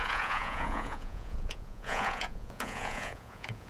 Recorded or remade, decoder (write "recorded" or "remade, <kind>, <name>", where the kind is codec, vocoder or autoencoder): remade, vocoder, Vocos